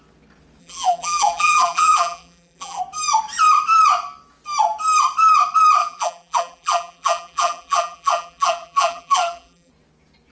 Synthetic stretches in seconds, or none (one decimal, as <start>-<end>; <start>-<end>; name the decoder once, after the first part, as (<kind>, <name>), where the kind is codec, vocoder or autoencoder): 0.6-2.8 (vocoder, BigVGAN v2); 5.8-9.7